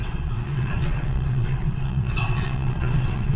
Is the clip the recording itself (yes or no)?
no